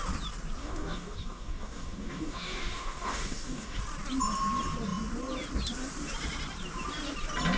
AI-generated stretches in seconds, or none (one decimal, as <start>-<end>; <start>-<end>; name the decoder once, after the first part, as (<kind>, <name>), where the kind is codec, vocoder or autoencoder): 0.6-3.8 (codec, DAC)